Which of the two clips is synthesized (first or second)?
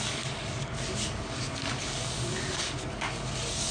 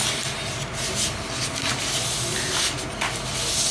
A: first